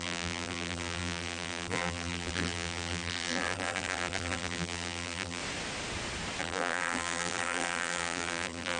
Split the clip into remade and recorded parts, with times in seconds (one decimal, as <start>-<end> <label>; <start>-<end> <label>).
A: 0.0-5.4 remade; 5.4-6.4 recorded; 6.4-8.8 remade